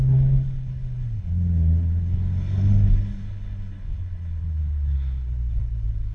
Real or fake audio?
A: fake